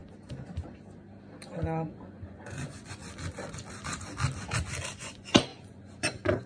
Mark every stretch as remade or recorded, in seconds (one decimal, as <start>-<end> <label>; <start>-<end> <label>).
0.0-1.5 recorded; 1.5-3.0 remade; 3.0-5.0 recorded; 5.0-6.5 remade